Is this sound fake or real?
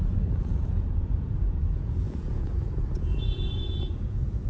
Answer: fake